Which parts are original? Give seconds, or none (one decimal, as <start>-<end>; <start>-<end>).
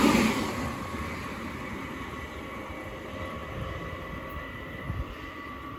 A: 1.0-2.5; 3.4-4.5